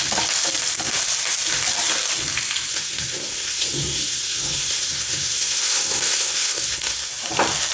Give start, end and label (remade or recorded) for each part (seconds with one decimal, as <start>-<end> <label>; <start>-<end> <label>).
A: 0.0-2.7 recorded; 2.7-7.1 remade; 7.1-7.7 recorded